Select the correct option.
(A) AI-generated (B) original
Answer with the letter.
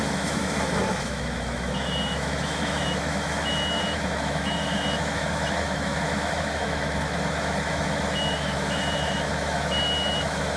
A